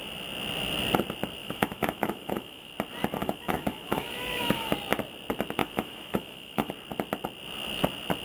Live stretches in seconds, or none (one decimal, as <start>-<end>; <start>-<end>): 0.0-1.4; 2.7-3.2; 4.7-5.6; 6.7-8.2